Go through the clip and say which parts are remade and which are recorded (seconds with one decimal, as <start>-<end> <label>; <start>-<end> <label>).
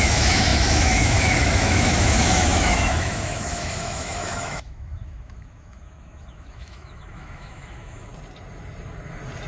0.0-8.1 remade; 8.1-9.5 recorded